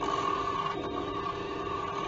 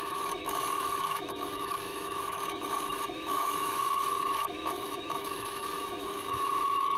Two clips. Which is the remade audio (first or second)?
second